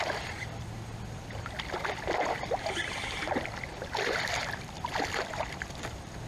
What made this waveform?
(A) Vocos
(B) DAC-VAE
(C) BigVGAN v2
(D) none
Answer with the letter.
C